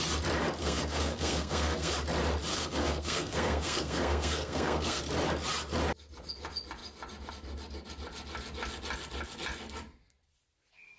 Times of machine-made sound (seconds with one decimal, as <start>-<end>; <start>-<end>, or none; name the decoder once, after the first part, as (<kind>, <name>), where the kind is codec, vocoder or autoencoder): 0.6-1.9 (codec, SNAC); 2.5-5.0